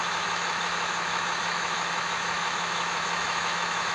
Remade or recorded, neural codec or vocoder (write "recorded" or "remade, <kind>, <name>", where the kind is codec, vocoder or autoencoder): remade, autoencoder, DAC-VAE